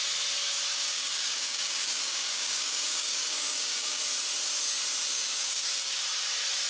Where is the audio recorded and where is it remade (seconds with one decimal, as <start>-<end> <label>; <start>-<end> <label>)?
0.0-0.7 recorded; 0.7-4.0 remade; 4.0-5.1 recorded; 5.1-6.0 remade; 6.0-6.7 recorded